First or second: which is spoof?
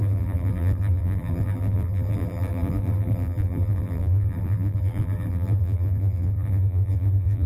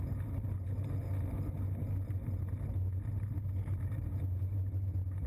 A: first